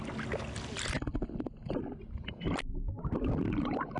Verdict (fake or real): real